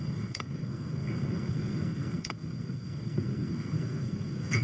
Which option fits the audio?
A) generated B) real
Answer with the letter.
A